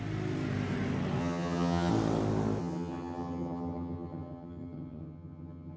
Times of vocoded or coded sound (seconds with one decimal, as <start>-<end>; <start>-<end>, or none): 1.2-1.9; 2.6-5.8